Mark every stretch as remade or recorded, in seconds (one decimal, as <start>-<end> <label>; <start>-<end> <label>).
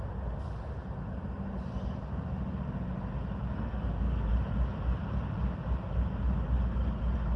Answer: 0.0-3.5 recorded; 3.5-4.3 remade; 4.3-7.4 recorded